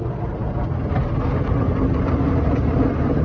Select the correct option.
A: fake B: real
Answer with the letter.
B